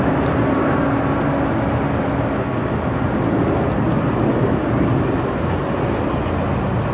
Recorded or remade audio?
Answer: recorded